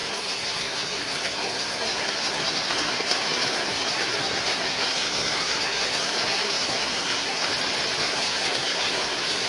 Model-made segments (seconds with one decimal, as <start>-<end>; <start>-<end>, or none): 0.0-7.5; 8.0-9.5